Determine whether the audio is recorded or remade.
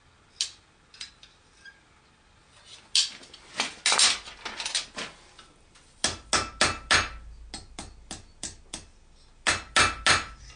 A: recorded